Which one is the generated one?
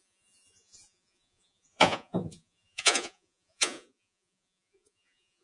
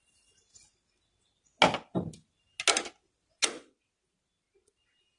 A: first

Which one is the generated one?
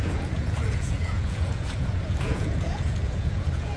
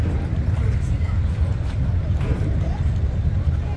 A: first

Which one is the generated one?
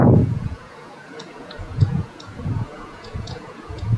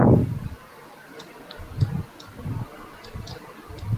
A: first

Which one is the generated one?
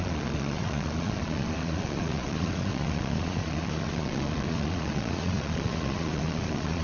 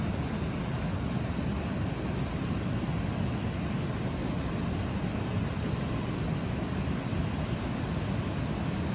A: first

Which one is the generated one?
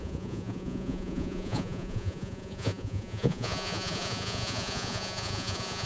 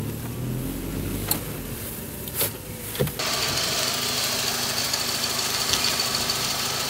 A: first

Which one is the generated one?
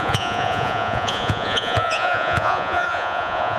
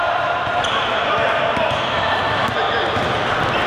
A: first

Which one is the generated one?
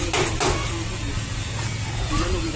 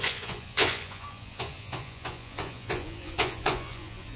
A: second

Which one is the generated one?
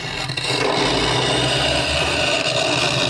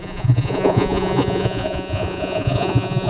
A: second